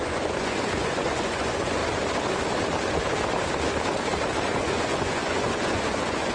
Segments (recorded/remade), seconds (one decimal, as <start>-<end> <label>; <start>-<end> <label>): 0.0-1.8 remade; 1.8-4.4 recorded; 4.4-6.3 remade